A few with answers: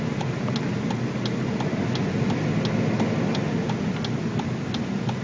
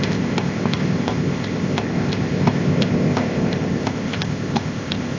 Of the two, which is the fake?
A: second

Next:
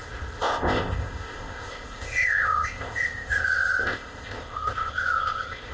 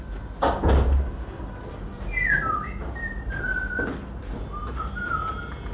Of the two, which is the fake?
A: first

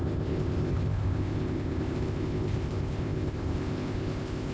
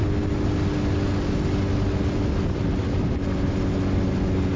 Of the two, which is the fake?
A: first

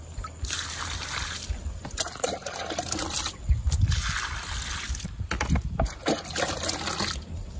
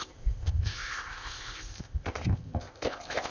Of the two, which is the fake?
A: second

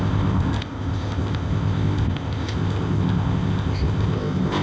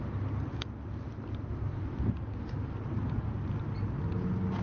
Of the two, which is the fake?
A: first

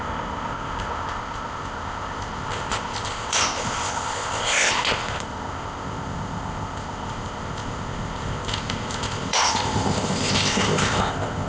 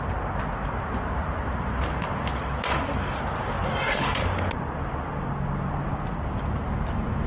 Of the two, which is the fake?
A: first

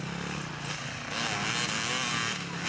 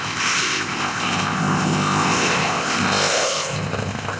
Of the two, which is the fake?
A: second